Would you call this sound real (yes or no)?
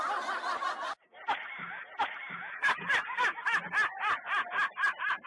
yes